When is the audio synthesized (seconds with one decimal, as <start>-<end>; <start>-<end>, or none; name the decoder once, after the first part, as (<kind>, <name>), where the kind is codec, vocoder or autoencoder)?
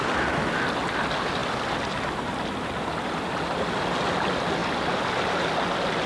none